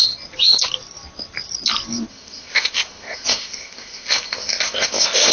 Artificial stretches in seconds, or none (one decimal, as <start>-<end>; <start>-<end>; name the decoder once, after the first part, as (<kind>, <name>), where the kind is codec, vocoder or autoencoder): 2.1-5.3 (codec, ZipCodec)